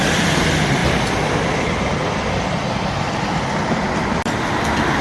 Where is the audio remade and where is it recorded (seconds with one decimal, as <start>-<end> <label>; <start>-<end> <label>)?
0.0-5.0 recorded